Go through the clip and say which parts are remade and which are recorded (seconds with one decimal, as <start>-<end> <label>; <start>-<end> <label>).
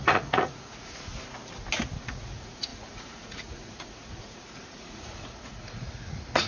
0.0-1.1 remade; 1.1-2.0 recorded; 2.0-6.5 remade